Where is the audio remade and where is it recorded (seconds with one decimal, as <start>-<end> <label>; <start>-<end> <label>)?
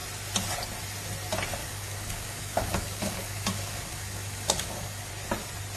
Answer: 0.0-1.6 recorded; 1.6-5.1 remade; 5.1-5.8 recorded